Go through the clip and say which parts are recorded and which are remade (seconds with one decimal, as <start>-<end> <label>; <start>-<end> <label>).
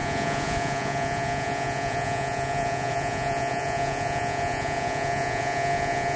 0.0-6.2 remade